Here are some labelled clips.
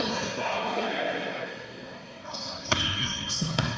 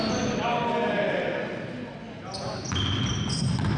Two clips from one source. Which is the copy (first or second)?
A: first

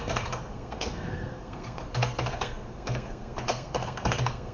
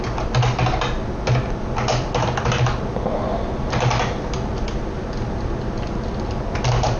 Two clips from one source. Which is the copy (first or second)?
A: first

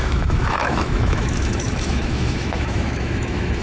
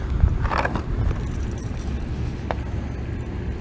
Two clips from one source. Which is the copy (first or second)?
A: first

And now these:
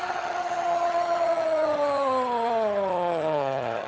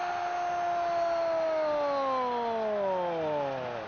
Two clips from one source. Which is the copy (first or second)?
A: first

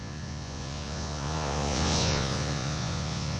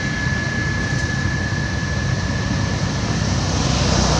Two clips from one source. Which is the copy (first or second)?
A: first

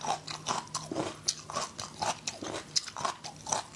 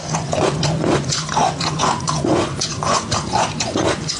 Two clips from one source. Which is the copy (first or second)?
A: second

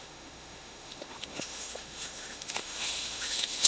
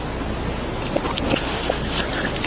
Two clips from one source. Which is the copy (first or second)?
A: first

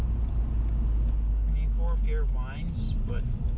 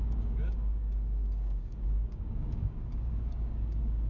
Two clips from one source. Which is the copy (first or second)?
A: second